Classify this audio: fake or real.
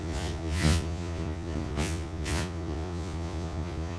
fake